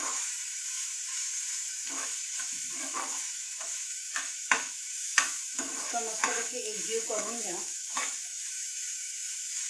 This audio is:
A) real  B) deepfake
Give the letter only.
B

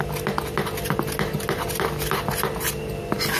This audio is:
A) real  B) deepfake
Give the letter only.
A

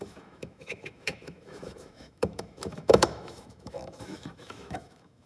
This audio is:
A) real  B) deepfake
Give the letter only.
B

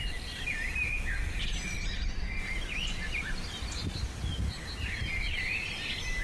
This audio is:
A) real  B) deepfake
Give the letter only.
A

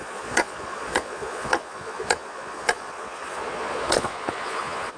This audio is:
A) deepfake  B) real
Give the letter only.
A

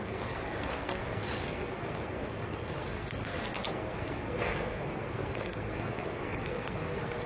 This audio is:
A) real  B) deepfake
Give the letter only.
B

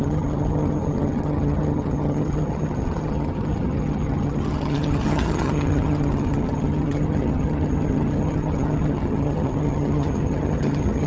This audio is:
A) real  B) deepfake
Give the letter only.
B